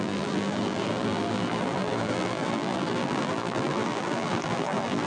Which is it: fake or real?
fake